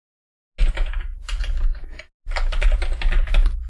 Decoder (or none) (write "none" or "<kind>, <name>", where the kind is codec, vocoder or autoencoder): none